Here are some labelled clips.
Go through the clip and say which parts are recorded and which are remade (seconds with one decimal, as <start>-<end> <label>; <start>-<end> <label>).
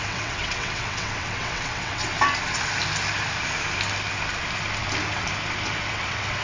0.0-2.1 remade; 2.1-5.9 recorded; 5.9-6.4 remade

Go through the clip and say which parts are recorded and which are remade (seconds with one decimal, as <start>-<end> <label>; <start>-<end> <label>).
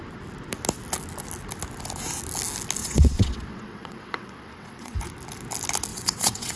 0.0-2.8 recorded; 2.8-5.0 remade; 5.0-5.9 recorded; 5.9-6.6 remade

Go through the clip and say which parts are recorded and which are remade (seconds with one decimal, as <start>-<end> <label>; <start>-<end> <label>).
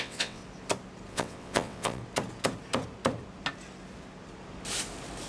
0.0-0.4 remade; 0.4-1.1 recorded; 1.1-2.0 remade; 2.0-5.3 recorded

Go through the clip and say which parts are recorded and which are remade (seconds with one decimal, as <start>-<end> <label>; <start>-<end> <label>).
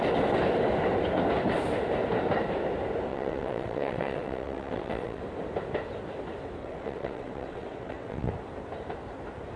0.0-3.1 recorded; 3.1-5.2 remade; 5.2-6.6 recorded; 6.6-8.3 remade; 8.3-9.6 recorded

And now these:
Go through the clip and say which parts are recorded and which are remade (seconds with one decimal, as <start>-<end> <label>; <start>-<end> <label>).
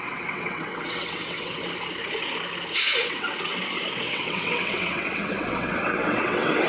0.0-1.6 remade; 1.6-2.8 recorded; 2.8-3.5 remade; 3.5-4.1 recorded; 4.1-6.7 remade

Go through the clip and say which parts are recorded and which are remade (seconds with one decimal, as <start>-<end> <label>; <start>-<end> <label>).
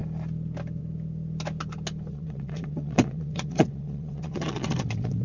0.0-2.1 recorded; 2.1-5.2 remade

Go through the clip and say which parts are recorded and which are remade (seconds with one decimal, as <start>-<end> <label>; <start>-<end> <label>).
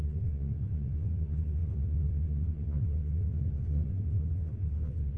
0.0-5.2 remade